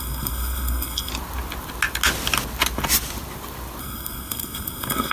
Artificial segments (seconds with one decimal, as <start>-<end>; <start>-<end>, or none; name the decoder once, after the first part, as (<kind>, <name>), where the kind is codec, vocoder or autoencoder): 0.0-1.1 (codec, SNAC); 3.8-5.1